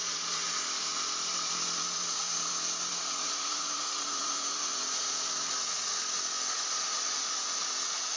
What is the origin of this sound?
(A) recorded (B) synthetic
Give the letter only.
B